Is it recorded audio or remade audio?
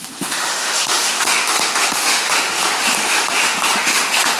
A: remade